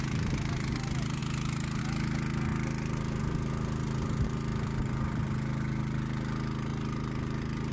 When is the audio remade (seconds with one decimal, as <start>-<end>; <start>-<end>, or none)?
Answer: none